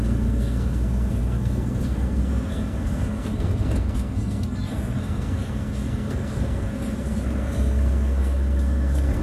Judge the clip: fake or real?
fake